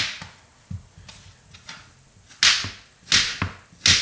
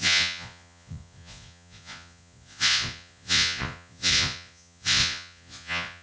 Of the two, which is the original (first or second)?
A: first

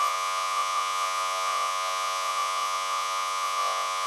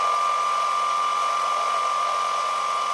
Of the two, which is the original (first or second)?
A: second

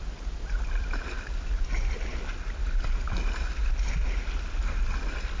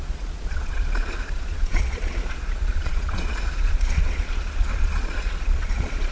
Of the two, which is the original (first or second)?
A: first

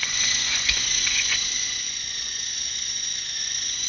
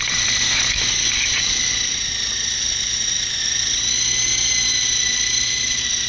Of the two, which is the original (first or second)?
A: second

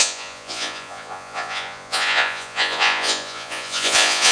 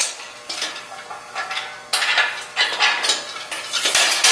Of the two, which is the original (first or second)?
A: second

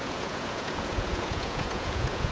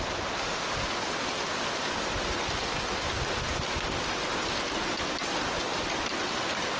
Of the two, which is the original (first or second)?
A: second